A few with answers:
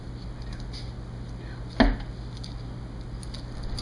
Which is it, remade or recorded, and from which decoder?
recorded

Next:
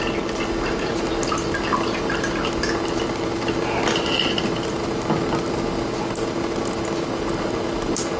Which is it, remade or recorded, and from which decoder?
recorded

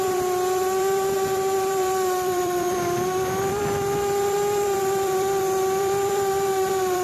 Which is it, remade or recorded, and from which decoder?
remade, vocoder, BigVGAN v2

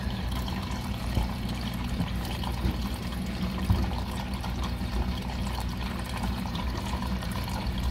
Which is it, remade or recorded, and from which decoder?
remade, vocoder, BigVGAN v2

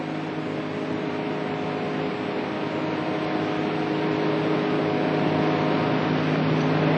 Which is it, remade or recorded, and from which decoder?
recorded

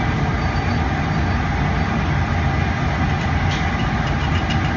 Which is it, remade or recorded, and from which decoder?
recorded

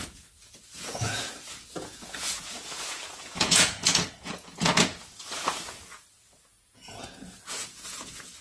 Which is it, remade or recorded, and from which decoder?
remade, vocoder, Vocos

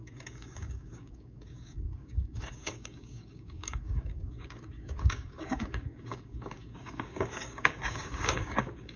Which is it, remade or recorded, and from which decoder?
remade, codec, DAC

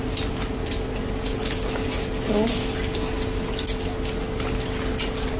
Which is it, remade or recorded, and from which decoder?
recorded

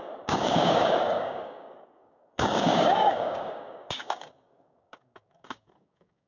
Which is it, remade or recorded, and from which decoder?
remade, codec, DAC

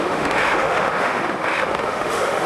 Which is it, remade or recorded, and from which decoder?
remade, autoencoder, DAC-VAE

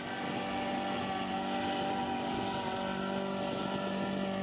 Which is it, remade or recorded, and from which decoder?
recorded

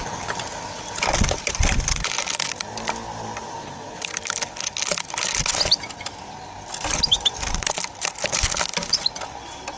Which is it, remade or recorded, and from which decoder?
recorded